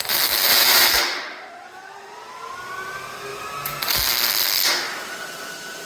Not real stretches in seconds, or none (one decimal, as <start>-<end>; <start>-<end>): 0.5-2.5; 4.7-5.9